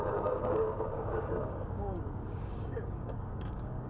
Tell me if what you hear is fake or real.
fake